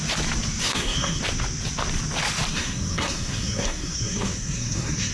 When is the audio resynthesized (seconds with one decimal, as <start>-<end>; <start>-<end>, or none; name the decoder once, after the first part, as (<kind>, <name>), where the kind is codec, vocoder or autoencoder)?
0.6-1.2 (codec, SNAC); 2.5-5.1